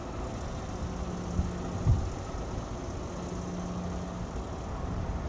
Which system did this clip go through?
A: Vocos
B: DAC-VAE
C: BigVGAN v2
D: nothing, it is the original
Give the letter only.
D